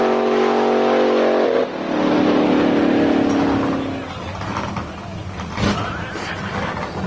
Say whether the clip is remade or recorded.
recorded